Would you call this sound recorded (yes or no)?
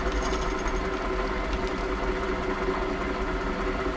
yes